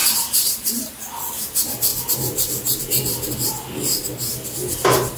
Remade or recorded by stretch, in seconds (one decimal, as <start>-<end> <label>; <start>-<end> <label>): 0.0-0.9 remade; 0.9-5.2 recorded